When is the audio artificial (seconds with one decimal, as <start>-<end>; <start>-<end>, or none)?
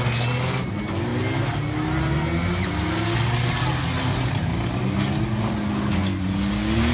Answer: none